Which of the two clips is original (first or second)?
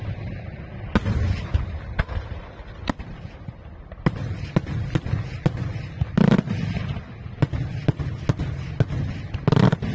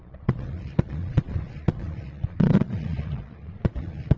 first